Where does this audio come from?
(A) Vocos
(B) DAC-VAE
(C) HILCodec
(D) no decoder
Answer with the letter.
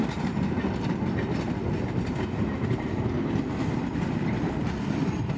D